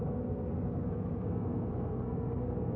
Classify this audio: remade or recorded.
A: remade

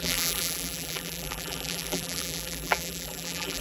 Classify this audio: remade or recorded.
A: remade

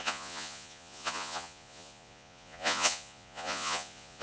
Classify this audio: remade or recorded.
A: remade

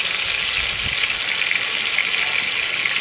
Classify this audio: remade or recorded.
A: recorded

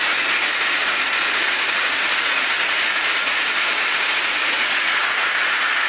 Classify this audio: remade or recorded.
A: remade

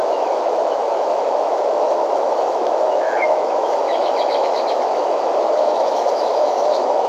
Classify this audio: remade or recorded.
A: remade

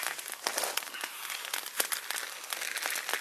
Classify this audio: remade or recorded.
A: recorded